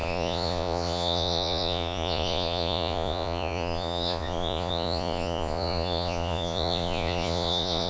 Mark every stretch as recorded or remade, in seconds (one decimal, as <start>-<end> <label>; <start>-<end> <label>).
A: 0.0-7.9 remade